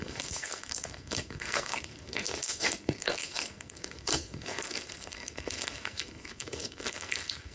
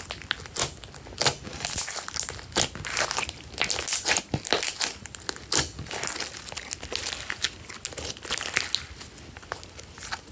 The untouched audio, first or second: second